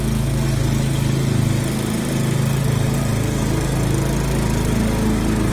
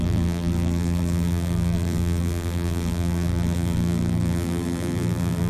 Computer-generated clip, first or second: second